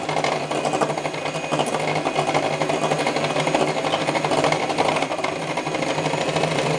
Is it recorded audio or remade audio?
recorded